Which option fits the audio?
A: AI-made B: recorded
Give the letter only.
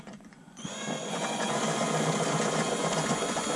A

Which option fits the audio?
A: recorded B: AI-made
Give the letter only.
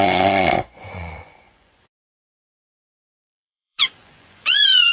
B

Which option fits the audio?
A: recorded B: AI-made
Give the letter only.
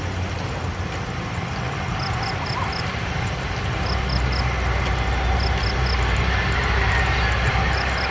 A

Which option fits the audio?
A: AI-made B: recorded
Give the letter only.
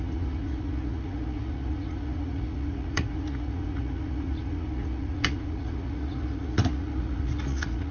A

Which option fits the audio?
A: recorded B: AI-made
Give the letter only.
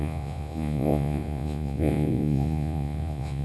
B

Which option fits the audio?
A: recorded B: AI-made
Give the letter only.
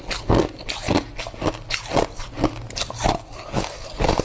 A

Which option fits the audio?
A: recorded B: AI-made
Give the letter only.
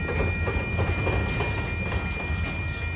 A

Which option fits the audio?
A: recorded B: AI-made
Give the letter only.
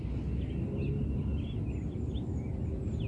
A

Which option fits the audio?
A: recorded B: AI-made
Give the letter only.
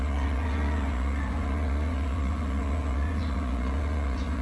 B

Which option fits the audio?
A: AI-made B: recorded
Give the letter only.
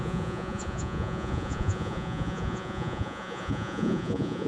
A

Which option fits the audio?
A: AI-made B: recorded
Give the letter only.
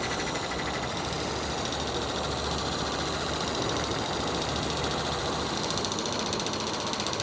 B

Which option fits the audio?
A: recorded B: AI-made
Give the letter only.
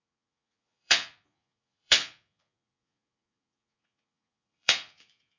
B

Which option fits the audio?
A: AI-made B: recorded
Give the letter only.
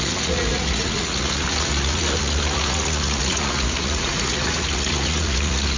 A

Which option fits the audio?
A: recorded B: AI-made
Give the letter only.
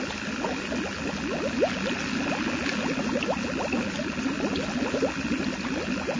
A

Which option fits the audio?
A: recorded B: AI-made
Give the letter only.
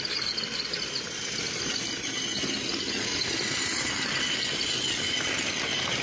A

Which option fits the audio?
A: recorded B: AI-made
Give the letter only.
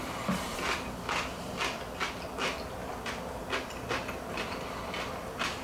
A